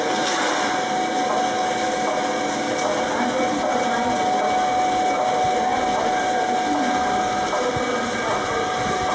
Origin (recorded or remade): recorded